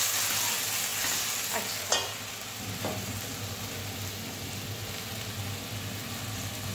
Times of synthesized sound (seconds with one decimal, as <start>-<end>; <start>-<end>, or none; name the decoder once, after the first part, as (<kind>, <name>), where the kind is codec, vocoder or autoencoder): none